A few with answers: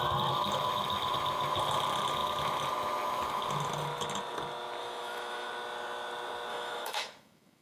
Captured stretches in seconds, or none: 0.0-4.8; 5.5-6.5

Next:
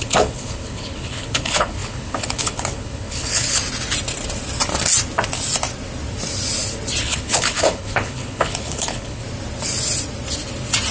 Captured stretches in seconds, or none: 3.6-7.0; 9.2-10.9

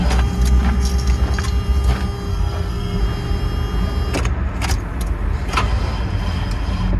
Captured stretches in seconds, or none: 0.0-2.3; 3.0-7.0

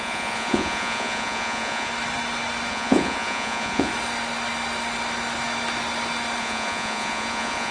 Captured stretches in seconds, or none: 1.9-2.7; 3.9-6.4

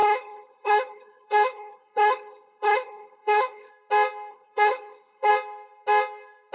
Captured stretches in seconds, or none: 3.7-4.3; 5.3-6.5

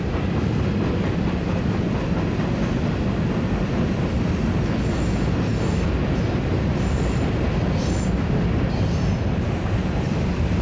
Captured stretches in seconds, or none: 0.0-10.6

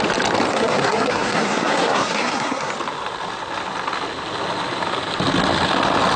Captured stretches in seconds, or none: 0.0-0.5; 2.7-6.2

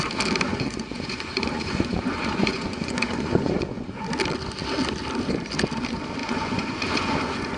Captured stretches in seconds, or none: 0.0-0.5; 4.1-6.2